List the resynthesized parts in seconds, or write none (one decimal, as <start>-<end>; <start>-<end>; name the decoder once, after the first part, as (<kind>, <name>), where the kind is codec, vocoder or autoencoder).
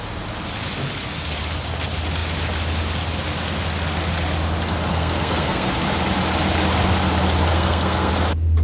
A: 4.9-5.7 (codec, SNAC); 7.5-8.1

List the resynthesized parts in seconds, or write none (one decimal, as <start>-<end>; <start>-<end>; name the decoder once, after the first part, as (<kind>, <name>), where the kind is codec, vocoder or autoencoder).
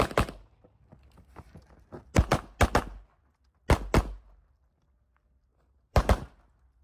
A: 5.5-6.3 (vocoder, BigVGAN v2)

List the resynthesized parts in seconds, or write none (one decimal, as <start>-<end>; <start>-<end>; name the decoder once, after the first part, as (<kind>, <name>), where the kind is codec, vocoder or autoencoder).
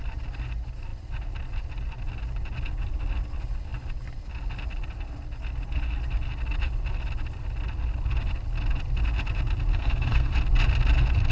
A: 9.7-10.3 (codec, SNAC)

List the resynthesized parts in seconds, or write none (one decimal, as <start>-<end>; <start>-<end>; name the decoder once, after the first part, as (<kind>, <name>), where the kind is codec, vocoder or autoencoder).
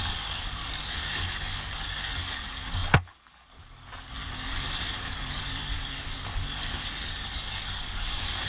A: 0.0-8.5 (codec, DAC)